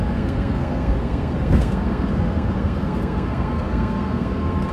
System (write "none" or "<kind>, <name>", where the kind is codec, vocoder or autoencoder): codec, SNAC